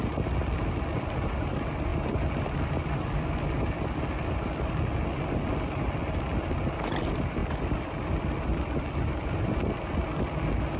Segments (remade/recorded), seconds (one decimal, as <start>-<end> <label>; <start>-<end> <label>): 0.0-1.9 recorded; 1.9-4.7 remade; 4.7-7.4 recorded; 7.4-9.4 remade; 9.4-10.8 recorded

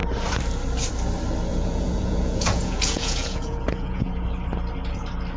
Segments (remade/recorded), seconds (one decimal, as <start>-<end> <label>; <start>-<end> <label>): 0.0-1.5 recorded; 1.5-4.1 remade; 4.1-5.4 recorded

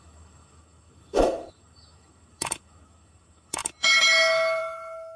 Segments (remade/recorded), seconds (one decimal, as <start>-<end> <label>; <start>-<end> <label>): 0.0-5.2 remade